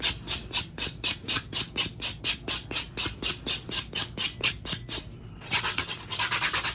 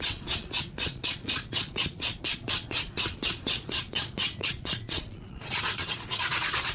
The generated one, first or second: second